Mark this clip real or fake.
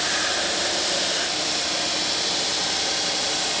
real